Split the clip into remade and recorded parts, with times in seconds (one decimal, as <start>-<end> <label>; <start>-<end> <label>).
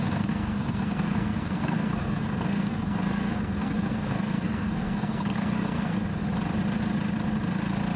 0.0-6.1 remade; 6.1-8.0 recorded